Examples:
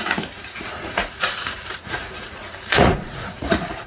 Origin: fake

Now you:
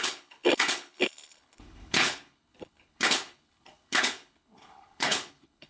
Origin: fake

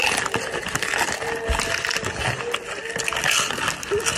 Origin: real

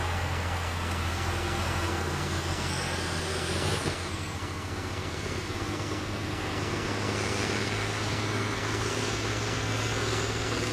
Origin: fake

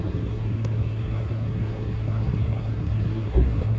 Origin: fake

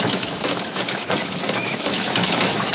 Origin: fake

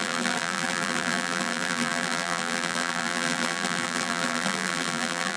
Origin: fake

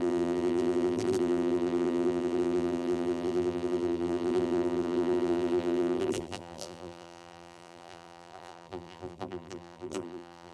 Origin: fake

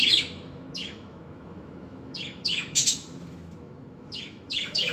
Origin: fake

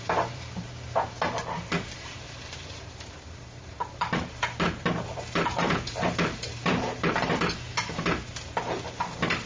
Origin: fake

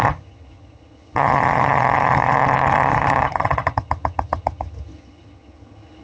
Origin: fake